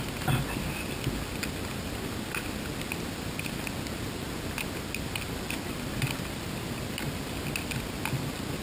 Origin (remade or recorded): recorded